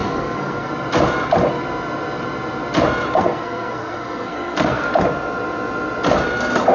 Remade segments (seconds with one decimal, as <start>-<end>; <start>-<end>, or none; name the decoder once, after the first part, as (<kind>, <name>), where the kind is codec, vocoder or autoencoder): 0.0-0.7 (codec, SNAC); 3.1-4.9